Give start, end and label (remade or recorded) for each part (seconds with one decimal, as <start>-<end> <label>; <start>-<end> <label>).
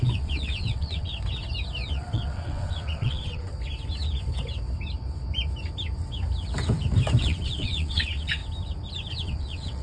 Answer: 0.0-1.1 remade; 1.1-1.9 recorded; 1.9-3.5 remade; 3.5-7.2 recorded; 7.2-8.4 remade; 8.4-9.1 recorded; 9.1-9.8 remade